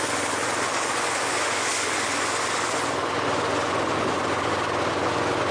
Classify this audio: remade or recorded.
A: remade